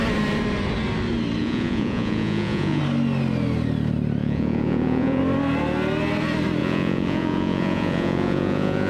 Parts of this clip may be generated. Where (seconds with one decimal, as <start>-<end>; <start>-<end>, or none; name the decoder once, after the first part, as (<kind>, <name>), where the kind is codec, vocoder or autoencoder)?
1.4-2.8 (vocoder, Vocos); 4.2-5.2; 6.6-8.9